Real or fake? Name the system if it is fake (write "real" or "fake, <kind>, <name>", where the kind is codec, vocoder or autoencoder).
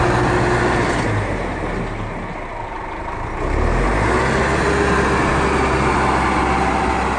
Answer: real